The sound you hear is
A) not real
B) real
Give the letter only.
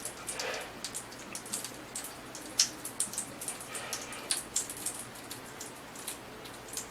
B